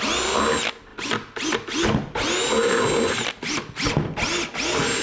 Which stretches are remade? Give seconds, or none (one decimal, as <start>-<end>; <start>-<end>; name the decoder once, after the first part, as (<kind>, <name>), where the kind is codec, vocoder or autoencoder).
none

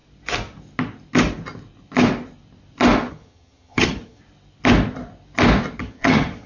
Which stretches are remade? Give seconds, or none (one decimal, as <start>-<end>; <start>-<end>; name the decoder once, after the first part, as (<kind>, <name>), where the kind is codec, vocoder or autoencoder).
3.1-4.2 (vocoder, HiFi-GAN); 5.8-6.5

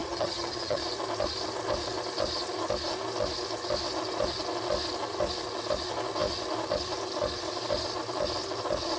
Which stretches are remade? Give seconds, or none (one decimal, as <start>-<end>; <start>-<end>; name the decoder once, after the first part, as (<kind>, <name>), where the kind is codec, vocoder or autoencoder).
0.0-0.8 (vocoder, HiFi-GAN)

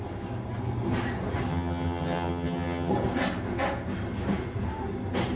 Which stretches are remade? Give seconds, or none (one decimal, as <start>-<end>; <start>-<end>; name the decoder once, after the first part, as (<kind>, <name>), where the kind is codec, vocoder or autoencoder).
1.5-2.9 (vocoder, HiFi-GAN)

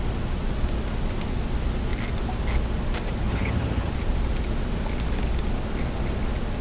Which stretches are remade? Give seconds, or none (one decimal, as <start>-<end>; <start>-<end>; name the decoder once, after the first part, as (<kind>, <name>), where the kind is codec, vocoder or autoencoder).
3.3-3.9 (vocoder, HiFi-GAN)